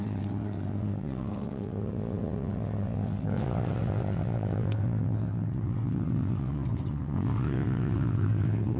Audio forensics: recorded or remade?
remade